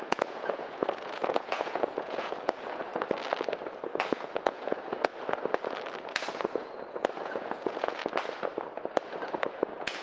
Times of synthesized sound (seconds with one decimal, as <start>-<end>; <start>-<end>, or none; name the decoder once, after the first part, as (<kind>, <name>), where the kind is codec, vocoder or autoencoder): 0.0-2.9 (vocoder, Vocos); 4.1-5.1; 6.0-8.0; 9.5-10.0